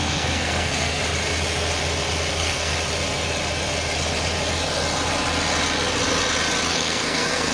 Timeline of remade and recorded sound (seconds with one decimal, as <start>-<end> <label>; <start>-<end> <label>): 0.0-1.0 remade; 1.0-2.3 recorded; 2.3-2.7 remade; 2.7-6.7 recorded; 6.7-7.5 remade